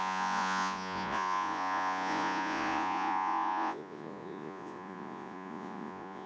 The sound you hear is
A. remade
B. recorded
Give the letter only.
A